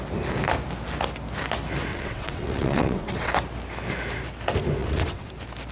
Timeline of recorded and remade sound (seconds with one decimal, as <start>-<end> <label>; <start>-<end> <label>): 0.0-1.9 recorded; 1.9-3.3 remade; 3.3-4.8 recorded; 4.8-5.3 remade; 5.3-5.7 recorded